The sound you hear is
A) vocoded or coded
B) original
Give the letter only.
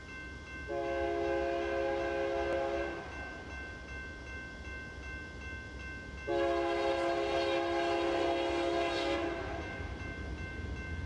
B